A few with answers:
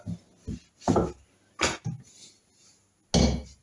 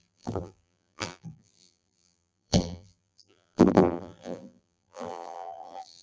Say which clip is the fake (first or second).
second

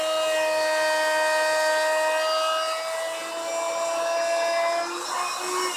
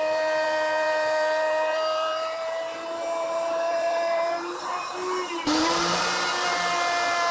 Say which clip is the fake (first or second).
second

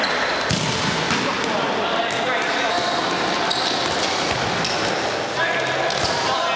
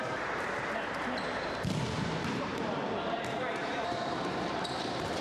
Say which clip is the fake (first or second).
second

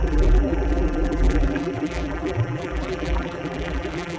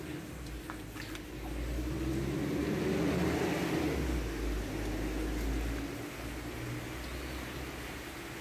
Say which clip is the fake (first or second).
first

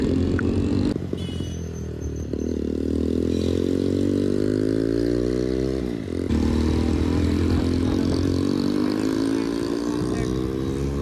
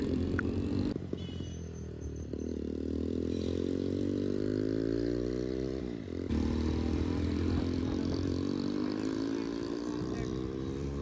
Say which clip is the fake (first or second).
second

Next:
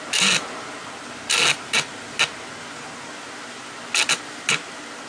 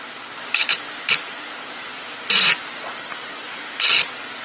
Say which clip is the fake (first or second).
second